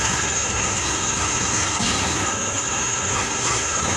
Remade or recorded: remade